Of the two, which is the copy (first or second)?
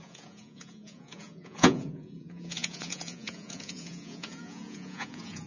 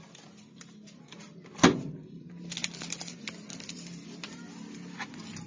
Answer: first